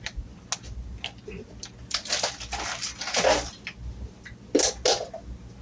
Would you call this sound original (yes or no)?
yes